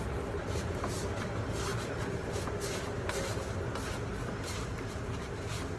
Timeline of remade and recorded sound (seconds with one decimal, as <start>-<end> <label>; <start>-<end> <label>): 0.0-5.8 recorded